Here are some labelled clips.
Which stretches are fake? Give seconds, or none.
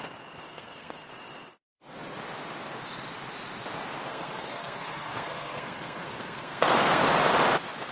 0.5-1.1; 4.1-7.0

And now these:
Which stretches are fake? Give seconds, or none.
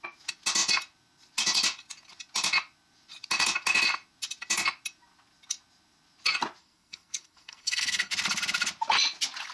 6.6-8.1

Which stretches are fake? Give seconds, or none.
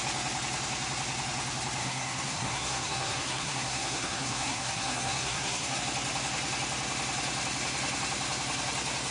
1.8-5.8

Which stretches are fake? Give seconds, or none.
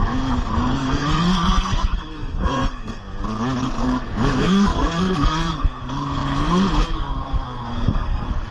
0.0-3.1; 3.6-8.5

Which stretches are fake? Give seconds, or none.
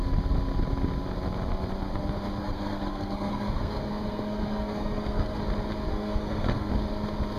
2.4-5.4; 5.9-6.7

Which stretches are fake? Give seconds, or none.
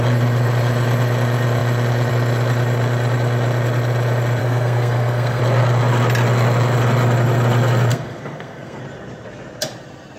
4.4-5.4; 7.9-8.8